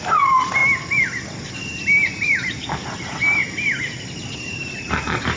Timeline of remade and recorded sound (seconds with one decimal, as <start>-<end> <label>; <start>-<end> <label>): 0.0-0.6 remade; 0.6-1.5 recorded; 1.5-3.4 remade; 3.4-4.2 recorded; 4.2-5.4 remade